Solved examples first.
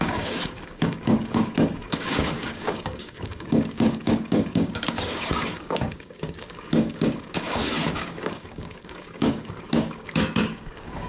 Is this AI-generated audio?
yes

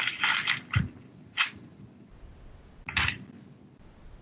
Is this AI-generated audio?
no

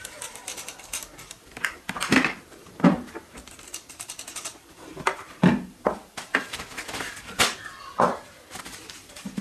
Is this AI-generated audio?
yes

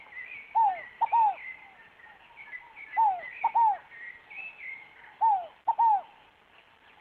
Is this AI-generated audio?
no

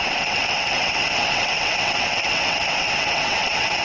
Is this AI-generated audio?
yes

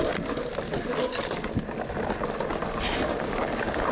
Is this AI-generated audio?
no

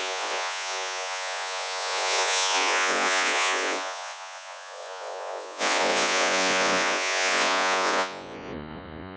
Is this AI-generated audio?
yes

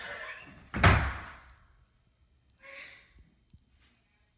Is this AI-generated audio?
no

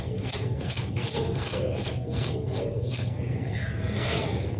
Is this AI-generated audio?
yes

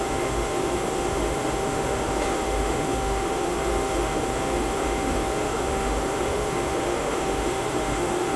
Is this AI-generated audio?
yes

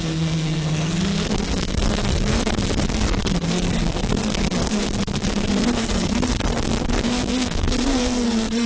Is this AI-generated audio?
yes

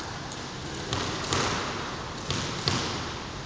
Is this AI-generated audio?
no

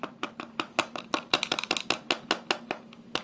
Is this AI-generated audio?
yes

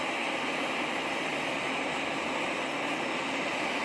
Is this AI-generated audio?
no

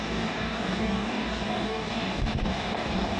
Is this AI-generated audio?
yes